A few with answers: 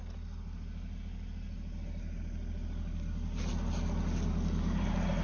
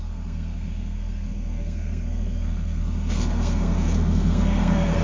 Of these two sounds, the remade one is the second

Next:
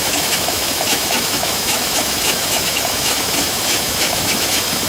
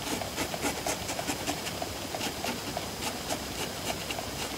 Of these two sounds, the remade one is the first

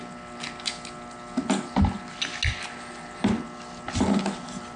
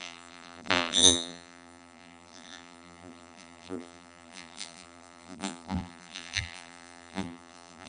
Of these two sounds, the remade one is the second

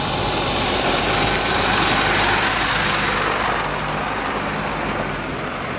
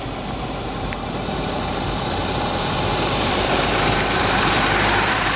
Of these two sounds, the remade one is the second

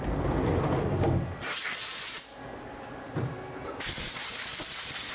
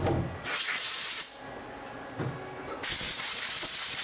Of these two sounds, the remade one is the first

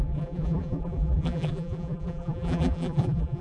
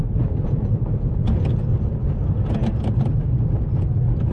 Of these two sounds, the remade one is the first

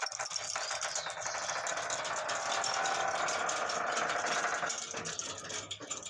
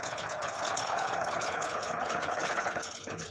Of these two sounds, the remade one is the second